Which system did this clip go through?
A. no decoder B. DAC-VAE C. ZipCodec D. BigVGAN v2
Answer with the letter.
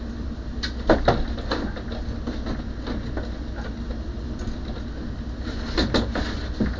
A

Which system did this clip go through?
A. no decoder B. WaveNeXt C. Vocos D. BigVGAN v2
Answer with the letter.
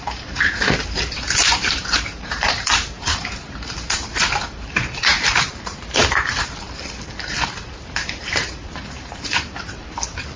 D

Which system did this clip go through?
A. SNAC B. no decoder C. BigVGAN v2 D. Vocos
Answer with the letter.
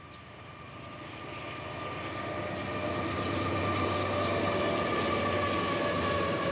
B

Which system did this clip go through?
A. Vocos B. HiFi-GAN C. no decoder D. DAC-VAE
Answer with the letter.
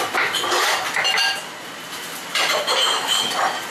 C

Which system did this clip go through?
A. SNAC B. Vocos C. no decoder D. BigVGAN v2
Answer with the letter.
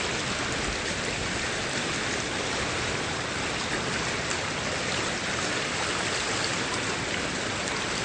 C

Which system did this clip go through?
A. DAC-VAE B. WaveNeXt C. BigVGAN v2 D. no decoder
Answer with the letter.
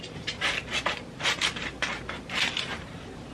C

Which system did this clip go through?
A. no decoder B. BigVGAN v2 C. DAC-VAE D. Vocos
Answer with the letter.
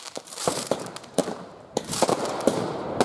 B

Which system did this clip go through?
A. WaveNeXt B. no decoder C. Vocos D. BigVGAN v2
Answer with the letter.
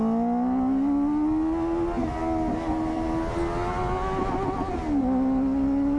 B